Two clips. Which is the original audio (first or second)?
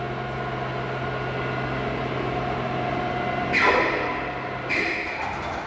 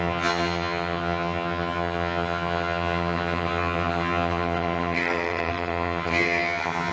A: first